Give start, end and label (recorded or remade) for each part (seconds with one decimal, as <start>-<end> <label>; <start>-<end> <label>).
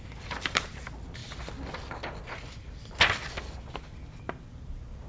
0.0-1.2 remade; 1.2-4.2 recorded; 4.2-5.1 remade